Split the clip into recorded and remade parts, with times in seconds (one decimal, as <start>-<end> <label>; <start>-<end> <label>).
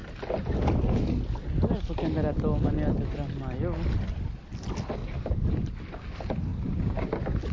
0.0-5.0 recorded; 5.0-5.7 remade; 5.7-6.5 recorded; 6.5-7.0 remade; 7.0-7.5 recorded